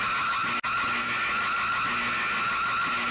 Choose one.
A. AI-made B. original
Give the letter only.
B